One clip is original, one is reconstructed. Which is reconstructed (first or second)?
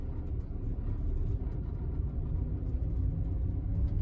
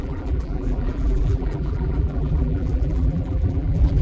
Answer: second